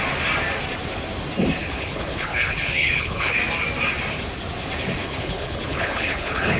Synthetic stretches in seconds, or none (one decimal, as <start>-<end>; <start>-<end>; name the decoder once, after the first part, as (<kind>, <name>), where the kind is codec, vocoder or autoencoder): 1.6-3.4 (codec, HILCodec); 5.0-6.6